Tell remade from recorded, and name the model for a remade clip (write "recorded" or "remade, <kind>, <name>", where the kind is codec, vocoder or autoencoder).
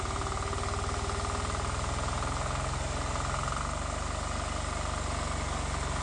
recorded